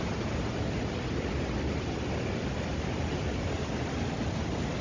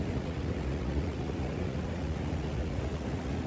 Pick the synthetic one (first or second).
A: second